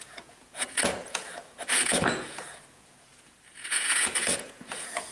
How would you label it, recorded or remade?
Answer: remade